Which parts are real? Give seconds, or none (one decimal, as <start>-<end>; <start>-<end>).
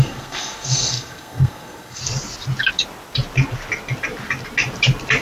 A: 2.0-5.2